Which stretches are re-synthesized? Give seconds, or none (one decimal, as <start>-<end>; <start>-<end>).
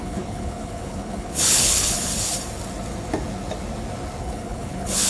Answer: 0.0-2.1; 4.2-5.1